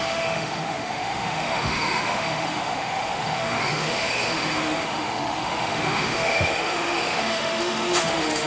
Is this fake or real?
fake